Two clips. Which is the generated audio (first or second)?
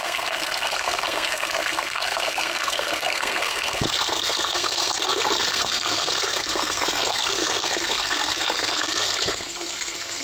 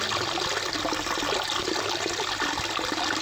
first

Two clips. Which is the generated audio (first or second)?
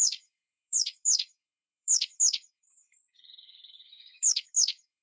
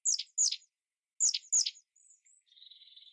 first